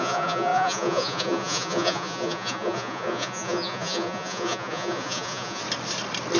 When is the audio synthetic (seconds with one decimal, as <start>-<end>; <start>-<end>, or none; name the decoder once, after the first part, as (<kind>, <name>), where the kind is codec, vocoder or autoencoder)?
0.0-5.6 (vocoder, Vocos)